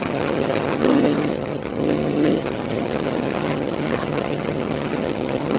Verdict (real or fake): fake